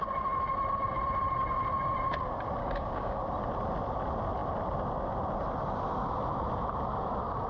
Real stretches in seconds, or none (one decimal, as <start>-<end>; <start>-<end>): 0.0-2.6; 3.2-7.5